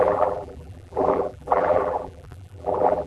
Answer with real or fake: fake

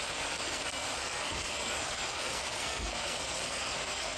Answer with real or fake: fake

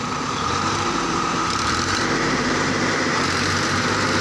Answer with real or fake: fake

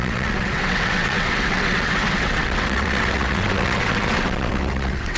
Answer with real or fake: fake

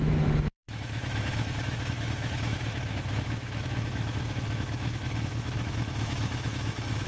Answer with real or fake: fake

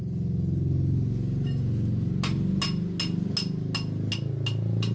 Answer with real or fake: real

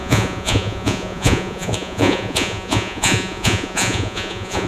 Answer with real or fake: fake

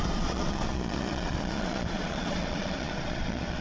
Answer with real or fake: fake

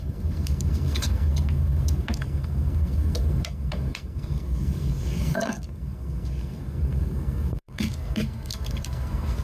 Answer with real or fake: fake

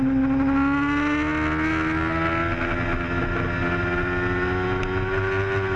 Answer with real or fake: real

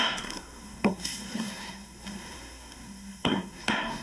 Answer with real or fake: fake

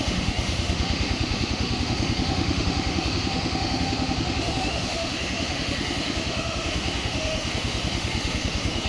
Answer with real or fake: fake